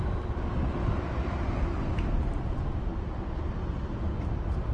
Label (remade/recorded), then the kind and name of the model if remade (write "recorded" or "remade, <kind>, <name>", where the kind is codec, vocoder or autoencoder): remade, vocoder, BigVGAN v2